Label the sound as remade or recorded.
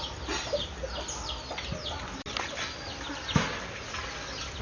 recorded